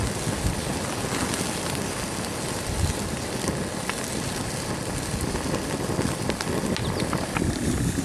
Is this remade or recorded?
recorded